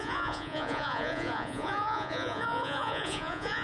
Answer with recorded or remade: remade